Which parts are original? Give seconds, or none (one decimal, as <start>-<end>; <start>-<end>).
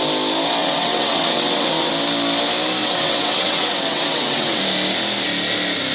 0.0-0.6; 1.9-2.8; 4.6-5.9